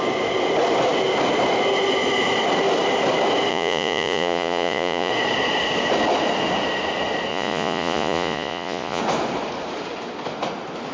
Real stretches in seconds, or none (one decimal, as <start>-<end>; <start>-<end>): 0.0-3.5; 5.1-7.3; 9.0-10.9